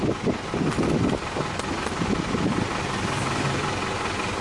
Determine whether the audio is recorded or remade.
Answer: recorded